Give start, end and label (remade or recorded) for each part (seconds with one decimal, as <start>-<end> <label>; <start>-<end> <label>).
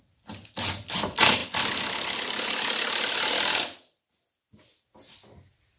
0.0-5.8 recorded